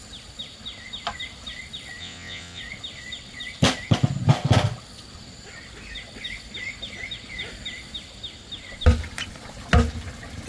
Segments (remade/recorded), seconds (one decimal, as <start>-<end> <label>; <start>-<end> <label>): 0.0-2.0 recorded; 2.0-2.6 remade; 2.6-10.5 recorded